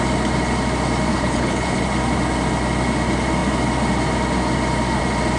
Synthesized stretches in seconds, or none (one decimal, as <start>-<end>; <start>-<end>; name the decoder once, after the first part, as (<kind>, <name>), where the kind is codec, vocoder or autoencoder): 1.1-1.8 (codec, HILCodec)